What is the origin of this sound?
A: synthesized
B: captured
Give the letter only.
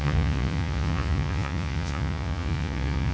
A